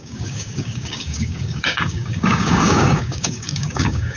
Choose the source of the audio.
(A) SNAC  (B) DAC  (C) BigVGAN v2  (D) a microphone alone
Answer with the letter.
B